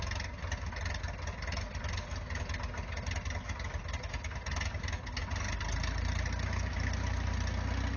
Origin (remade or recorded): recorded